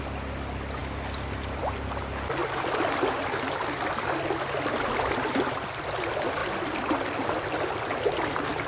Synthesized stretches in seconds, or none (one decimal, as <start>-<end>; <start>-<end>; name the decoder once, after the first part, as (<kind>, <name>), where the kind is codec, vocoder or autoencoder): none

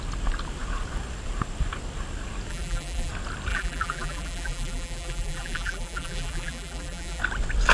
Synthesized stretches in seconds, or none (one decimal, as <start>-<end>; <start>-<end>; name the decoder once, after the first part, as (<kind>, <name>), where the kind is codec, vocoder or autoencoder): 2.5-3.1 (vocoder, BigVGAN v2); 3.5-7.2

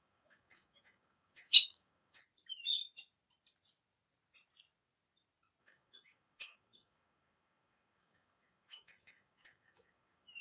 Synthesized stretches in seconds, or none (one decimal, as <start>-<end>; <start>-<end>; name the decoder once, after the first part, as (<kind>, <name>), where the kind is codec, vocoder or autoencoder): 0.0-2.2 (autoencoder, DAC-VAE); 5.6-10.4

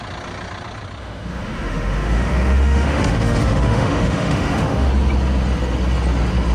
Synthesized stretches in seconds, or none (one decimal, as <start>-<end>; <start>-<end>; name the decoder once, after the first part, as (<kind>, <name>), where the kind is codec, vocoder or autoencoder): 1.0-4.9 (autoencoder, DAC-VAE)

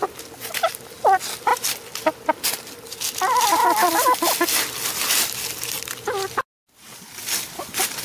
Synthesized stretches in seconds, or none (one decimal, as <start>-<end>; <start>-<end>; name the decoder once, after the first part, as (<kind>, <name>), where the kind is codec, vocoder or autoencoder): none

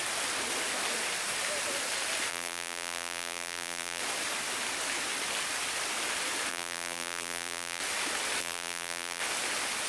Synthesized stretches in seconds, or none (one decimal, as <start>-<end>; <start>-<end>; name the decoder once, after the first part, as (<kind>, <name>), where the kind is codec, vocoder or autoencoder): 2.3-4.0 (vocoder, BigVGAN v2); 6.5-7.8; 8.4-9.2

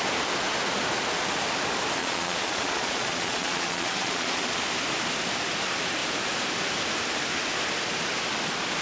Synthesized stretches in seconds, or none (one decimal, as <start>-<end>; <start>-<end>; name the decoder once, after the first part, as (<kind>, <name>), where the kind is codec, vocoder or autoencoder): 2.0-4.6 (vocoder, Vocos)

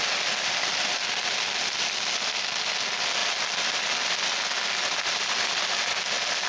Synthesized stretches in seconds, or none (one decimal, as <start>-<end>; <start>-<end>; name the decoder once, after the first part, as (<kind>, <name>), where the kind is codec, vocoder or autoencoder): none